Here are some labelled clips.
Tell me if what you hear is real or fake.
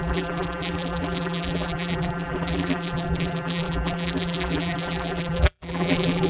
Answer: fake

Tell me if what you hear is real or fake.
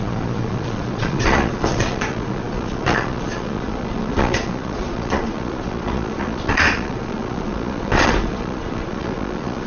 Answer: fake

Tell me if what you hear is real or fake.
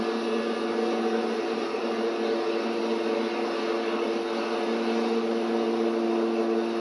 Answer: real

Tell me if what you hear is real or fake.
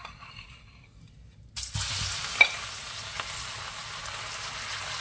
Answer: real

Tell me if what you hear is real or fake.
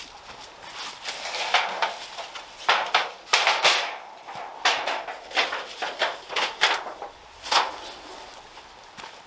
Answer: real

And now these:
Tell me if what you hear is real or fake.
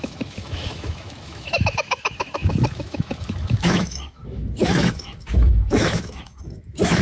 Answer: fake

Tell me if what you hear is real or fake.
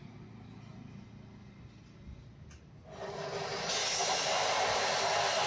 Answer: real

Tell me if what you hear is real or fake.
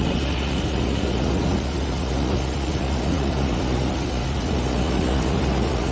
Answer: fake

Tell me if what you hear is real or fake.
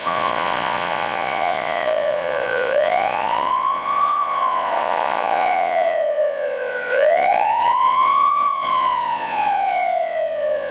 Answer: fake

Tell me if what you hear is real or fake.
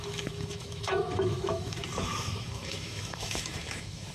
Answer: fake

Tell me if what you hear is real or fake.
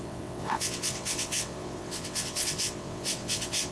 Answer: fake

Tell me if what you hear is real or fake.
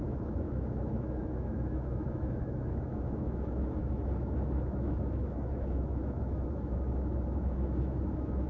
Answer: fake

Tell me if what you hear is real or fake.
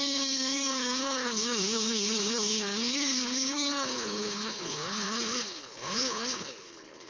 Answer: fake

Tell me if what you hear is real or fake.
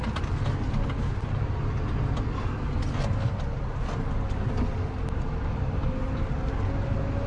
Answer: real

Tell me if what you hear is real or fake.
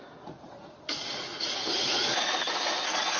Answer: fake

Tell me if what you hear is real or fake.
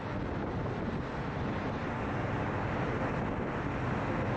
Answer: real